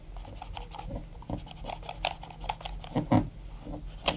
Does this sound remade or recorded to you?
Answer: recorded